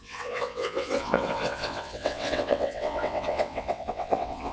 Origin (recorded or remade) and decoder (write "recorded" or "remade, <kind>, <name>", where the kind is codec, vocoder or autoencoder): remade, vocoder, WaveNeXt